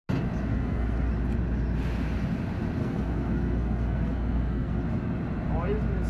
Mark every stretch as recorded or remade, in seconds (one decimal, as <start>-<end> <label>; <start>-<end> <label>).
0.0-0.5 recorded; 0.5-1.1 remade; 1.1-2.8 recorded; 2.8-4.8 remade; 4.8-6.1 recorded